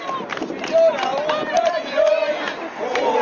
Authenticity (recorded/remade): recorded